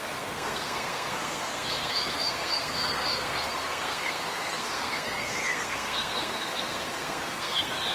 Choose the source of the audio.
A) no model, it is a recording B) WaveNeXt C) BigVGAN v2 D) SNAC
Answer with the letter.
D